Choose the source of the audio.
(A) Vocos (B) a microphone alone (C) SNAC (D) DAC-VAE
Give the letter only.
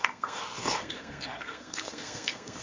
C